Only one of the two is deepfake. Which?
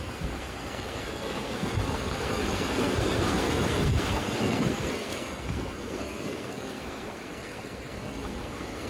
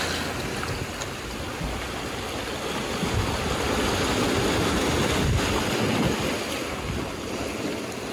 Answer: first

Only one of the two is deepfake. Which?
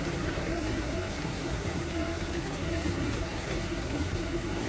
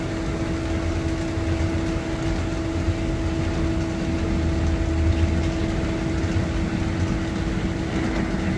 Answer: first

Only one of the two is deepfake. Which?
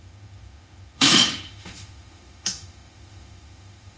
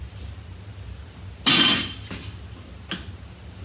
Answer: first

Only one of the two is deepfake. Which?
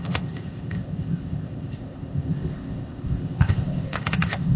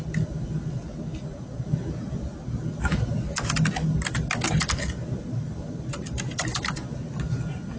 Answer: first